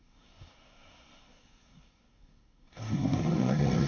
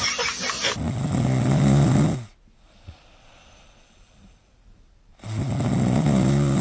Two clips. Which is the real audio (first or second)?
second